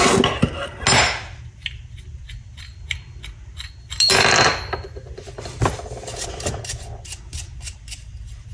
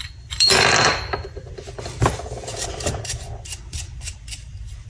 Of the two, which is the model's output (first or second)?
second